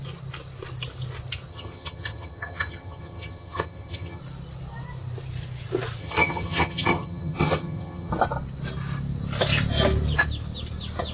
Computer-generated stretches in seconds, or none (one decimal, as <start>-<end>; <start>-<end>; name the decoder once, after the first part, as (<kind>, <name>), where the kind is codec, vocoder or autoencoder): 1.5-4.2 (vocoder, HiFi-GAN); 6.0-8.1